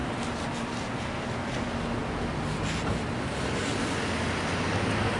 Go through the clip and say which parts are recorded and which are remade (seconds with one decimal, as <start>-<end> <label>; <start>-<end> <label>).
0.0-5.2 recorded